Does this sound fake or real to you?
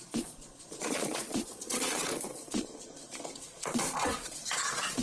fake